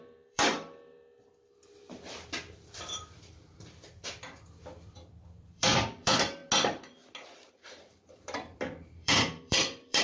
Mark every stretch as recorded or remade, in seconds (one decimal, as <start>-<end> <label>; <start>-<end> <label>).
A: 0.0-6.4 remade; 6.4-7.7 recorded; 7.7-10.0 remade